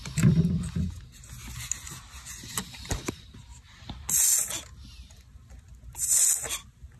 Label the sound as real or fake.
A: real